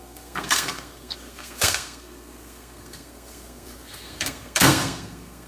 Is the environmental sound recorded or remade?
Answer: remade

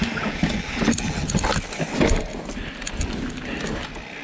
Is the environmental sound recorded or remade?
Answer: recorded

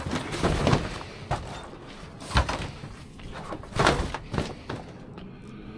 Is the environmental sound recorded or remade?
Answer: recorded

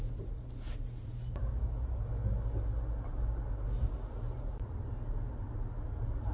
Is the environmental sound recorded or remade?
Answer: recorded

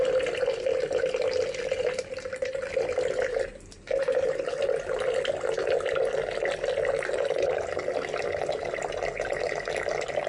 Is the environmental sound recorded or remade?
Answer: recorded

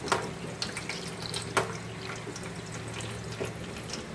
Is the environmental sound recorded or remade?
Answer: recorded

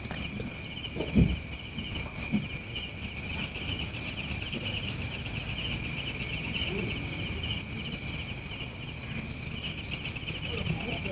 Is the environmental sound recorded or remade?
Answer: recorded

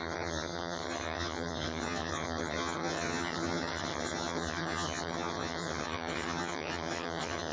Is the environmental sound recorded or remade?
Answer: remade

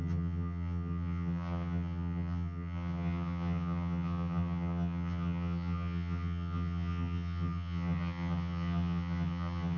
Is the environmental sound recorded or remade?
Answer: remade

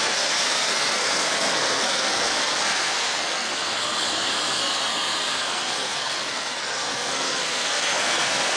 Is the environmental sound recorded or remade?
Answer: remade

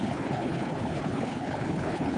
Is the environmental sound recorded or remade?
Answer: remade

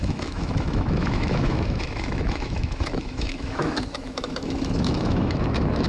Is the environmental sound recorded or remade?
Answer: remade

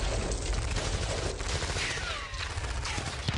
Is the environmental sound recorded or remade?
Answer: recorded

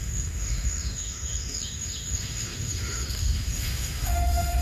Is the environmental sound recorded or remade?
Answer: remade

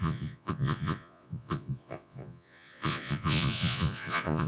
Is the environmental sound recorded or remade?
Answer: remade